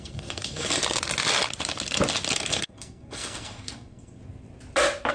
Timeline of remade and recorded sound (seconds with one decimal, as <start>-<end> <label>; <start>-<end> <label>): 0.0-0.8 remade; 0.8-2.3 recorded; 2.3-4.2 remade; 4.2-5.1 recorded